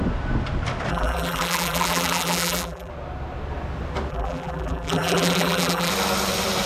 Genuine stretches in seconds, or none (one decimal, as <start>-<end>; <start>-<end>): 0.0-0.9; 2.9-4.1; 5.9-6.7